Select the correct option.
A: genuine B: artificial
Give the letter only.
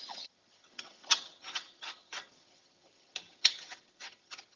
B